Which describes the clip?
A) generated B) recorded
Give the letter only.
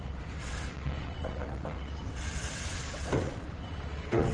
A